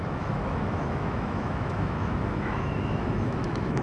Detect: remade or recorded remade